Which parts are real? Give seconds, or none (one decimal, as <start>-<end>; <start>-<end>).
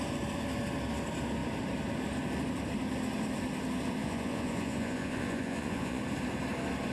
0.0-4.0; 6.0-6.9